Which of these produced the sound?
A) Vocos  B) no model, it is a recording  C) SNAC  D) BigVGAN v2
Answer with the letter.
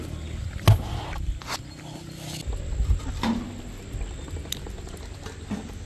B